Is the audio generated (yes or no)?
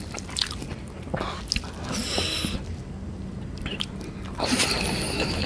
no